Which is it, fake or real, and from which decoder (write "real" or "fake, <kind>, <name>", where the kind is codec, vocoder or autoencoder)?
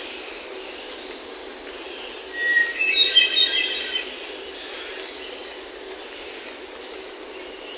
real